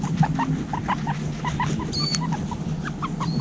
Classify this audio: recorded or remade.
recorded